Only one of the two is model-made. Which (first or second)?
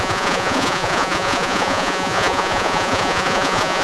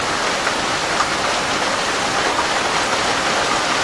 first